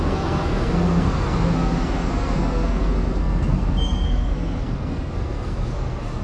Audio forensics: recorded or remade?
remade